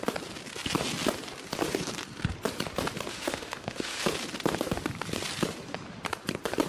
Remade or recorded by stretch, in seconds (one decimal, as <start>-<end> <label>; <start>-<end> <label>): 0.0-3.1 recorded; 3.1-4.0 remade; 4.0-6.7 recorded